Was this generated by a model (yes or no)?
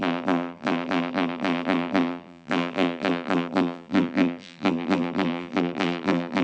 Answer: yes